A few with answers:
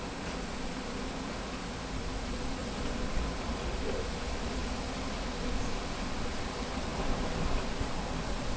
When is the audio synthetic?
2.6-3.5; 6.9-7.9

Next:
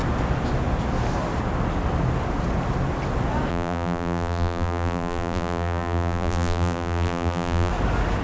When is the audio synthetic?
3.5-7.7